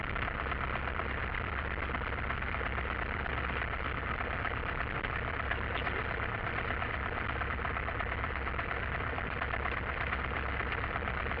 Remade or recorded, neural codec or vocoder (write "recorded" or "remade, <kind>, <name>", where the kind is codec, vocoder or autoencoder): remade, vocoder, BigVGAN v2